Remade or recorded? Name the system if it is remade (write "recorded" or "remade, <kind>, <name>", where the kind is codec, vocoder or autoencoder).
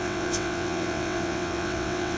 remade, vocoder, WaveNeXt